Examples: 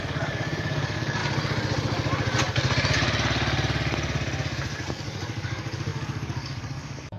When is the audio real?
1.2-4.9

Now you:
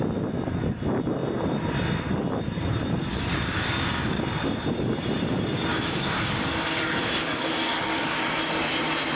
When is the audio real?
0.0-3.1; 4.2-5.7; 8.2-9.2

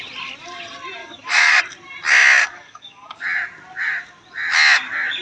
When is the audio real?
0.0-1.0; 1.6-2.4; 3.2-5.2